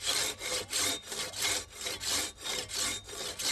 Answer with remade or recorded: recorded